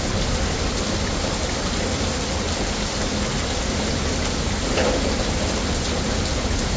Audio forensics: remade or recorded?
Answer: recorded